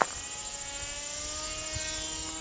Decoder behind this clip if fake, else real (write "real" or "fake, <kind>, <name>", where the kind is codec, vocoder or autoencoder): real